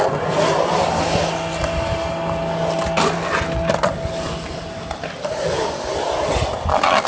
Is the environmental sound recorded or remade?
recorded